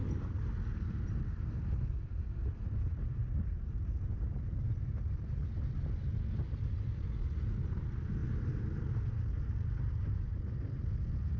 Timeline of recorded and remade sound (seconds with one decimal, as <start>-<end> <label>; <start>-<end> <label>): 0.0-11.4 recorded